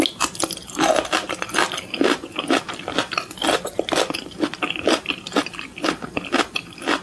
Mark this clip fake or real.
real